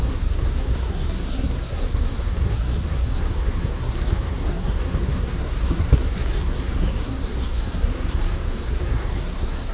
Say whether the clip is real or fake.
fake